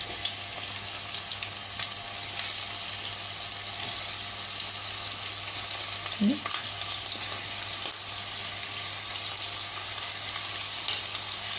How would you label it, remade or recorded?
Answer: recorded